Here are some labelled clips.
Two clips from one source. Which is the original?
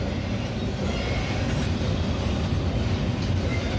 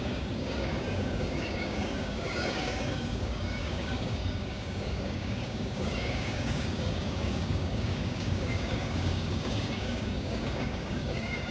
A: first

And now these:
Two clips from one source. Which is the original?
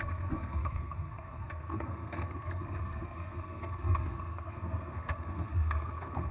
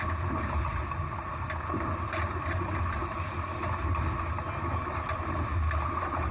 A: second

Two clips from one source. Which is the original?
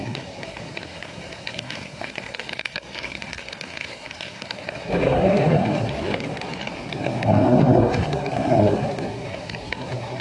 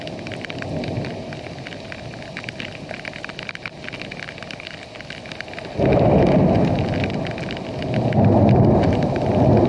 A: second